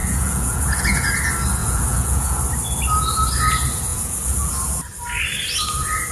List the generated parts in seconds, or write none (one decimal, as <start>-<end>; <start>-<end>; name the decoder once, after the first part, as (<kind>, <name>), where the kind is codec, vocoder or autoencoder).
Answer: 0.0-1.1 (vocoder, Vocos); 1.6-2.4; 3.9-4.5